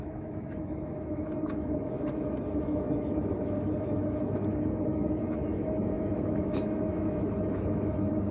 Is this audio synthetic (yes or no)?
yes